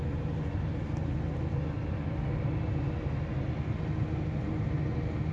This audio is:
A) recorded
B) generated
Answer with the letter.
A